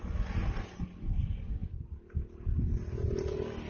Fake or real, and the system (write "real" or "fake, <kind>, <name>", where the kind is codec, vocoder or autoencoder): real